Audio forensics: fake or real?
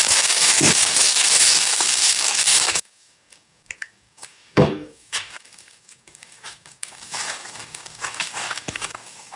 fake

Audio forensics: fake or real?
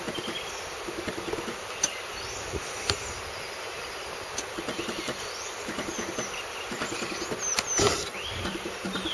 fake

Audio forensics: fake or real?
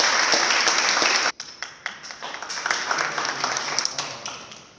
real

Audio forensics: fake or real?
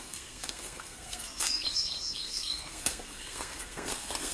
fake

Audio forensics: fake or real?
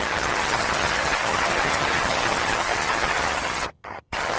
fake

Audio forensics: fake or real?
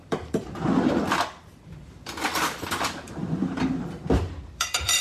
fake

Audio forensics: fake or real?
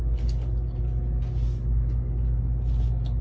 real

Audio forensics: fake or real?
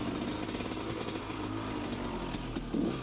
real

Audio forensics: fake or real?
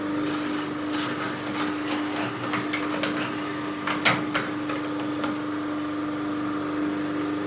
real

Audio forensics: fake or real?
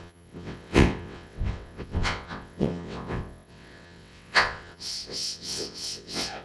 fake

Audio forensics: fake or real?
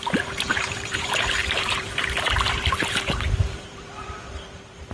fake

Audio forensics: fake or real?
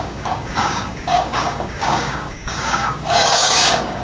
fake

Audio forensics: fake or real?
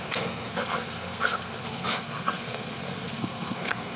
fake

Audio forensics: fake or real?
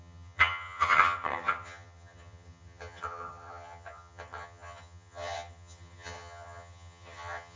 fake